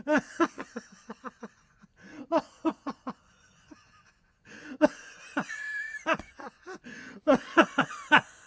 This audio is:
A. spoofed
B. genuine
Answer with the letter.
A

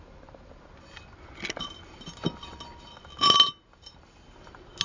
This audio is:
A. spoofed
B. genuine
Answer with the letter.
B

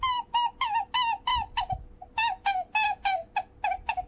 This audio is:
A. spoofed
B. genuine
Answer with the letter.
B